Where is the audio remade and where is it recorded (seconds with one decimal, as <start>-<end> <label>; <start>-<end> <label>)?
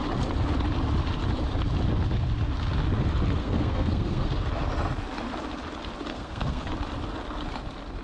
0.0-3.4 recorded; 3.4-4.3 remade; 4.3-6.1 recorded; 6.1-6.7 remade; 6.7-8.0 recorded